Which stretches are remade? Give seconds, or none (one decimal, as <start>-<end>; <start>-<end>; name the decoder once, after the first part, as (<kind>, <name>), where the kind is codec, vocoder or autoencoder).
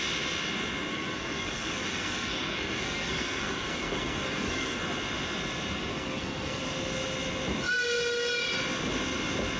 0.9-4.8 (codec, SNAC); 5.9-6.6